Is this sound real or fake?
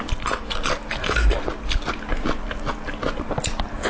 real